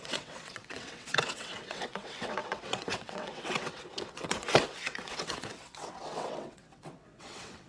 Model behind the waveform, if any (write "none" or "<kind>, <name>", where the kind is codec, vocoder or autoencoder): vocoder, WaveNeXt